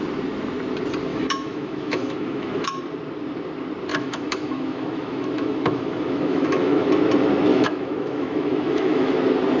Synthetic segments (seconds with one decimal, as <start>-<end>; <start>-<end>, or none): 1.1-2.8; 3.9-6.9; 7.5-9.1